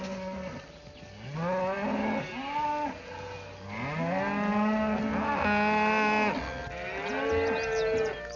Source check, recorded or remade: recorded